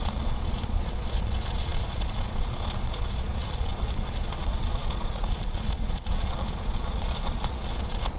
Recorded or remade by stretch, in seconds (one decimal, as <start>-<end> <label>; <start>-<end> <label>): 0.0-8.2 remade